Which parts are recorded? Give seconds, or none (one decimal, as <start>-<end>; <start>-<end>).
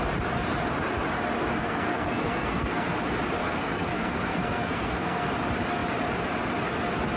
0.0-1.6; 2.9-3.4; 5.3-7.2